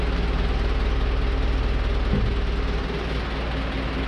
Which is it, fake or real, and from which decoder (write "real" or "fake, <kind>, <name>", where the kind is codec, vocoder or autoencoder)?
real